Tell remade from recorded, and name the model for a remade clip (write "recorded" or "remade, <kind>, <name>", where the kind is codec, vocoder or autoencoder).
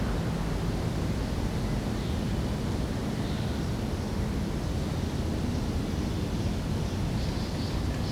recorded